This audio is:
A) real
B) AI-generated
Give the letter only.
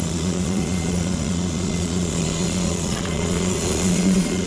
B